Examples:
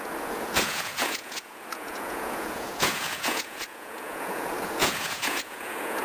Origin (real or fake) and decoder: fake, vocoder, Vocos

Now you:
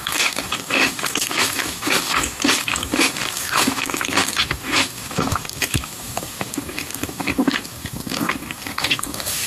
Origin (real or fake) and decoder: fake, codec, DAC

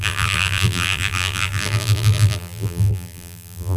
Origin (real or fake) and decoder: fake, vocoder, BigVGAN v2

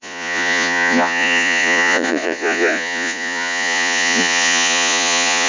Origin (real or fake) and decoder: fake, vocoder, Vocos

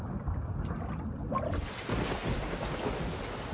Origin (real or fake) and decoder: real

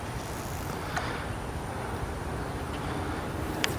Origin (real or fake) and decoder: real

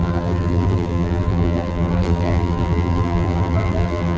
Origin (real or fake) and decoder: fake, vocoder, BigVGAN v2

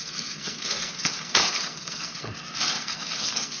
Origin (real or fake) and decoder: fake, codec, SNAC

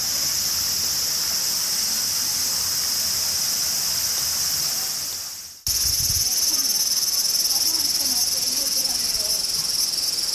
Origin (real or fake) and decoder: real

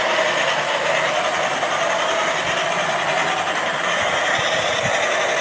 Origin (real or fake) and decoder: real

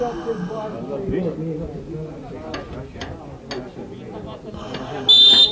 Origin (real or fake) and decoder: real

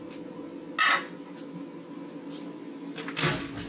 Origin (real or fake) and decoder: real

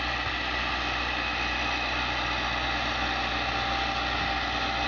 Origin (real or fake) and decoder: real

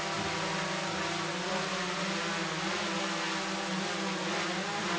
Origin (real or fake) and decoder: real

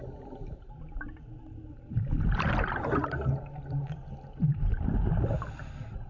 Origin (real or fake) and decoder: real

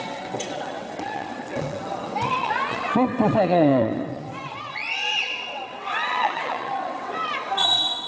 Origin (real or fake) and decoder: fake, vocoder, WaveNeXt